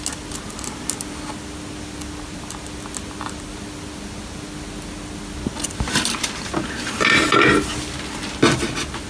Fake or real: real